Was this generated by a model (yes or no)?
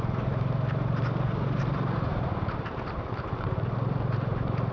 yes